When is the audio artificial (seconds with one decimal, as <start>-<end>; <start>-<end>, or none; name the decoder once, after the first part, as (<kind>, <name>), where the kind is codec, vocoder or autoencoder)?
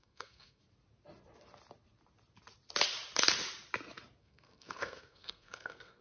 0.0-0.6 (codec, SNAC); 4.2-6.0